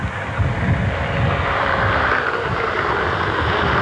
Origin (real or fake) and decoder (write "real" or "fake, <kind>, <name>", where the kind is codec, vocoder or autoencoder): real